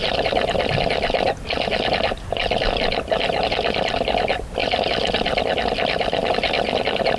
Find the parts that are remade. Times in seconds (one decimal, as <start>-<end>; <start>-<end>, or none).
6.2-6.7